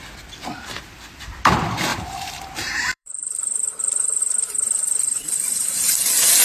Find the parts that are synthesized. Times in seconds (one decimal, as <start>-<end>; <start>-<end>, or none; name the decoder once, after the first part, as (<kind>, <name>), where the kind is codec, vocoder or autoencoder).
1.9-4.2 (vocoder, BigVGAN v2)

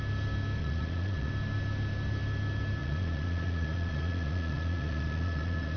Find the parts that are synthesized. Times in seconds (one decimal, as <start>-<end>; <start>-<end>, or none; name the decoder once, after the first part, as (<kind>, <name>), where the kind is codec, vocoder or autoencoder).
0.6-1.3 (vocoder, Vocos); 2.8-5.8

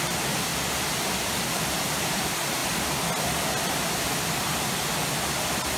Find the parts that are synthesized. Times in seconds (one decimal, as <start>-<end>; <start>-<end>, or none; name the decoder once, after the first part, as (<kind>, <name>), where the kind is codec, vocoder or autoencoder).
0.0-0.5 (vocoder, BigVGAN v2); 1.2-2.6

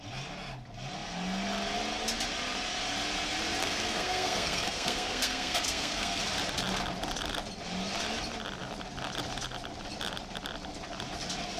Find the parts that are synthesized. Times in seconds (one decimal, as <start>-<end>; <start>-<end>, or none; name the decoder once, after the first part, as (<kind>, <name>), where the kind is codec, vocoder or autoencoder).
3.6-6.2 (codec, SNAC)